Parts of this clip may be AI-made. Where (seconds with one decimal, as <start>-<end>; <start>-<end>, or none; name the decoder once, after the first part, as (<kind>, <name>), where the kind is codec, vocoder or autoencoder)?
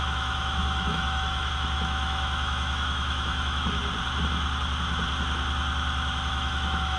0.0-3.8 (autoencoder, DAC-VAE); 6.3-7.0